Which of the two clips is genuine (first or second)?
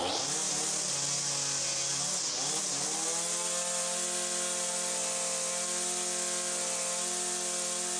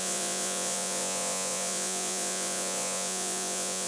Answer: first